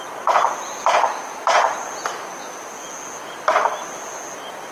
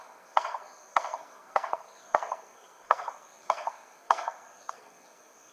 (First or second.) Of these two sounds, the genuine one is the first